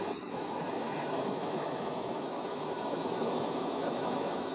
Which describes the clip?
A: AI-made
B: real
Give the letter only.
A